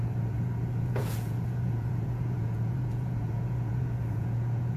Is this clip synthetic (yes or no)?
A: yes